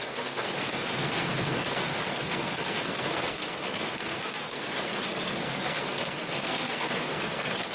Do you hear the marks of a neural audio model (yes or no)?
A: yes